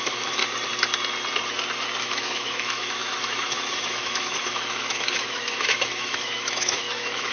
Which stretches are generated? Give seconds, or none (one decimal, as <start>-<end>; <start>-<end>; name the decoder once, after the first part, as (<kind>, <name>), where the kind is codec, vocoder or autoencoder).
0.0-0.4 (autoencoder, DAC-VAE); 2.0-7.3

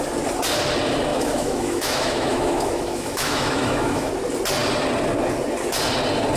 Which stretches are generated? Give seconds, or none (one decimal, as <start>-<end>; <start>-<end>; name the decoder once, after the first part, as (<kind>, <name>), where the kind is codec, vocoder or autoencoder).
1.1-4.1 (autoencoder, DAC-VAE)

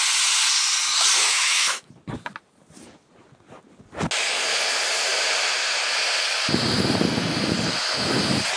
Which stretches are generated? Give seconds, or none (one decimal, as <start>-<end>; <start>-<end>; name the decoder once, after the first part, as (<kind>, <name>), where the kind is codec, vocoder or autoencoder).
1.2-1.9 (autoencoder, DAC-VAE)

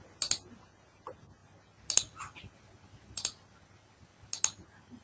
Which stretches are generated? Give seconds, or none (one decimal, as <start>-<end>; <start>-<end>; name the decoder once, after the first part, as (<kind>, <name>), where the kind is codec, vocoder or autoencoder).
none